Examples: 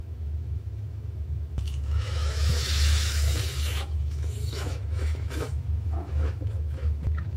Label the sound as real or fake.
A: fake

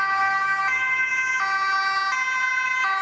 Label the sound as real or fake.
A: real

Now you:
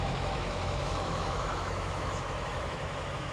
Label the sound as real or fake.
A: fake